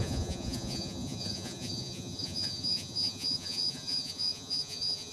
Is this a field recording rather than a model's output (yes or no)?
no